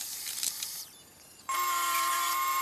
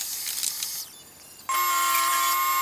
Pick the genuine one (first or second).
second